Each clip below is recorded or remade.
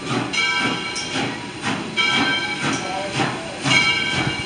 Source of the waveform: recorded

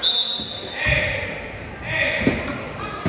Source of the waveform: recorded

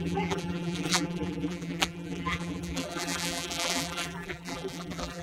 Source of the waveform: remade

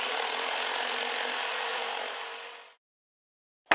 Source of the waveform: recorded